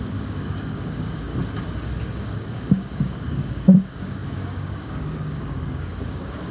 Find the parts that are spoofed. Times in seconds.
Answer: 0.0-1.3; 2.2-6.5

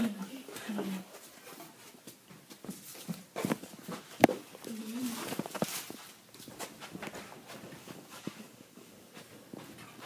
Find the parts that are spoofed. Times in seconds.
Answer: 7.8-9.1

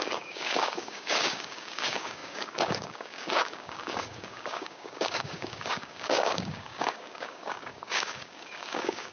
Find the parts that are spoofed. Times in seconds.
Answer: 0.0-9.1

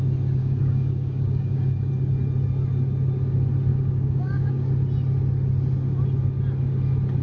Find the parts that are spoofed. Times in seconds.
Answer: 0.4-1.9; 3.7-4.7

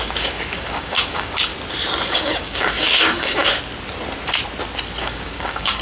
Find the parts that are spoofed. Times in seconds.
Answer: 0.0-1.5; 2.1-3.5; 5.0-5.8

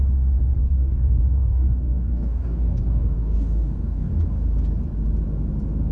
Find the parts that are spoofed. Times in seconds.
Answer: 0.6-4.1